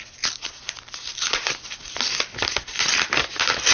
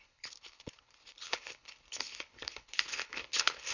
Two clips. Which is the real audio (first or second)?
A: first